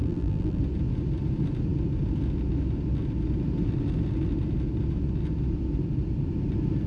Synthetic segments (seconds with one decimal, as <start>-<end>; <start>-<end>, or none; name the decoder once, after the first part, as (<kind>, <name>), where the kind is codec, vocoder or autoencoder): 0.0-0.6 (vocoder, BigVGAN v2)